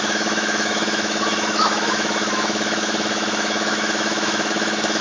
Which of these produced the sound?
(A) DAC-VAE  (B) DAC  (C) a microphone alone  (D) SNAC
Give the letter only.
A